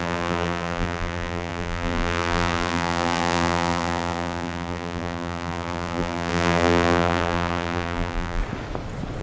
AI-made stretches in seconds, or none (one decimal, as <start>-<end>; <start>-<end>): 0.0-8.4